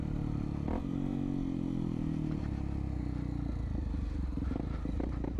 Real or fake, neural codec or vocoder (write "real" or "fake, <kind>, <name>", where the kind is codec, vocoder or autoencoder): real